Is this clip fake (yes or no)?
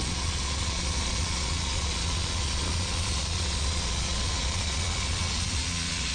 yes